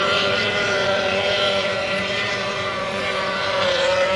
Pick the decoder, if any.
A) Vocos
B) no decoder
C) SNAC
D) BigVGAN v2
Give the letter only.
A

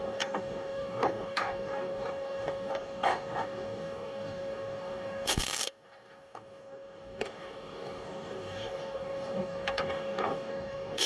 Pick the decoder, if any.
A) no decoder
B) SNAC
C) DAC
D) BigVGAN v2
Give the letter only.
C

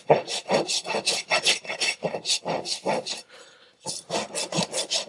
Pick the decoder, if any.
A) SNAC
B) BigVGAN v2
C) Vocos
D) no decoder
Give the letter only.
D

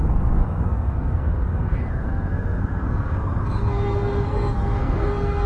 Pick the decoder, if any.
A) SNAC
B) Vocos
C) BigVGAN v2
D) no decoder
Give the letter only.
A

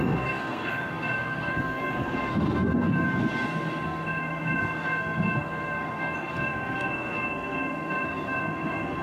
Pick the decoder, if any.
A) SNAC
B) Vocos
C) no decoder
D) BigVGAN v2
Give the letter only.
A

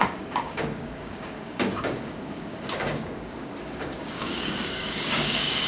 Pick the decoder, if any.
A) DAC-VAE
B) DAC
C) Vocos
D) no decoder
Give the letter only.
B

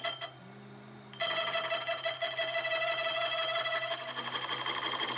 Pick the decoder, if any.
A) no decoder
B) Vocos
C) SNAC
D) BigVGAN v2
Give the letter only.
A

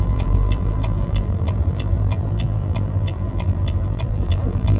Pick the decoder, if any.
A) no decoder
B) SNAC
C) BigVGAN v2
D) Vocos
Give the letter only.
C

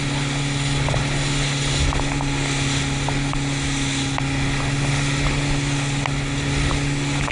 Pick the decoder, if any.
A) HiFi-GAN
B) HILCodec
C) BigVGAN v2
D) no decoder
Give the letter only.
D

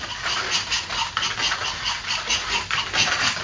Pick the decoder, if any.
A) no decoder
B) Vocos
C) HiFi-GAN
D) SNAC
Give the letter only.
A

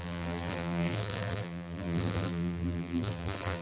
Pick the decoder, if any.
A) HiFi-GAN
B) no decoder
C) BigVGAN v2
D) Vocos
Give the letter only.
C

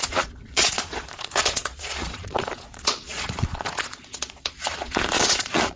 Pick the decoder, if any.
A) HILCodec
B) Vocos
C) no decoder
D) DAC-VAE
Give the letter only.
B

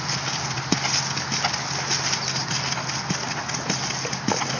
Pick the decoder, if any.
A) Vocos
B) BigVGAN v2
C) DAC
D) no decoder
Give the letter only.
D